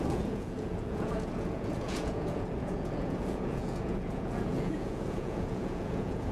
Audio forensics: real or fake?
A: fake